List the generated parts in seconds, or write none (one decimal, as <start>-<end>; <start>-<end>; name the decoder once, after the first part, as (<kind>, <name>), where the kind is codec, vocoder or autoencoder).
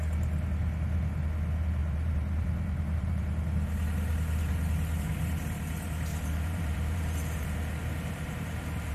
1.8-3.2 (vocoder, BigVGAN v2); 6.1-8.9